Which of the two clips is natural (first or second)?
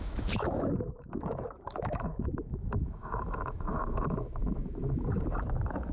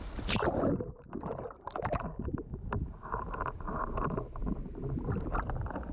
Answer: second